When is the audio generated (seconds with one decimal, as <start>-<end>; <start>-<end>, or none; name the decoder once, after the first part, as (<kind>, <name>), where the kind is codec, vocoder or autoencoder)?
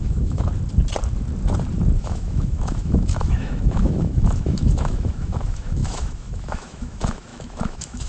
0.0-0.5 (autoencoder, DAC-VAE); 2.0-8.1